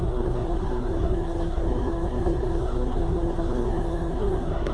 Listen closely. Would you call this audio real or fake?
fake